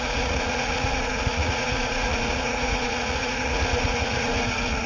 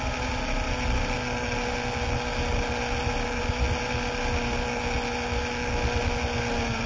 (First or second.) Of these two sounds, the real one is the second